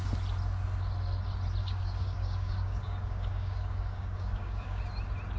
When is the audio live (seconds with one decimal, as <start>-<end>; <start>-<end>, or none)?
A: 0.0-1.6; 4.8-5.4